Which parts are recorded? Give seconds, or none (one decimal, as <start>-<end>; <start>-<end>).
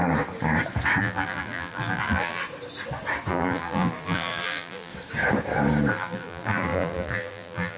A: 0.0-1.0; 2.4-3.3; 4.9-5.9